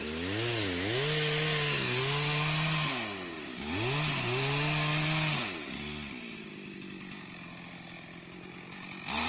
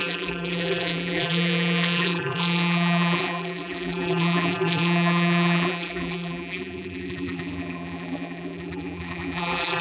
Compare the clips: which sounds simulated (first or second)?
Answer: second